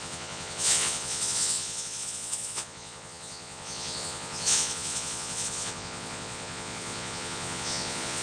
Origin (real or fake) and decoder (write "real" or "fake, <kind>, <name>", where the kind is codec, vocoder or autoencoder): fake, vocoder, Vocos